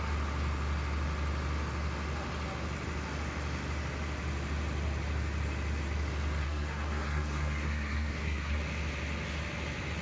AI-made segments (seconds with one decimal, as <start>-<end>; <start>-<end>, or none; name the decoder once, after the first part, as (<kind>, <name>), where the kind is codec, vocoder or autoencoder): 6.4-8.6 (codec, SNAC)

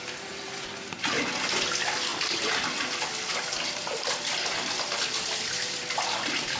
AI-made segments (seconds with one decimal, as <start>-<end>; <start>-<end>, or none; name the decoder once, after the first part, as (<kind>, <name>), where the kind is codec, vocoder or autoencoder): none